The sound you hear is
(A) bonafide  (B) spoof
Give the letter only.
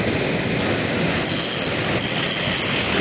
A